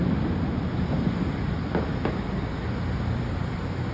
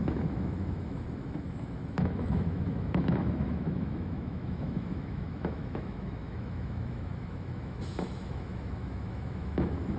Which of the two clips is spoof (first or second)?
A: second